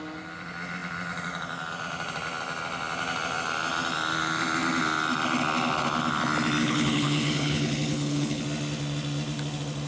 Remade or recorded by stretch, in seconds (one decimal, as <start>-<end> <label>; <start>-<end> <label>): 0.0-6.6 recorded; 6.6-8.4 remade; 8.4-9.9 recorded